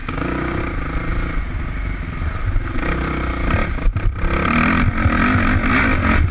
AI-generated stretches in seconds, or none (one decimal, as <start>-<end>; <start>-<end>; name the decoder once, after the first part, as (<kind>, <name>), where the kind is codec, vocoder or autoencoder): 0.0-0.6 (codec, DAC)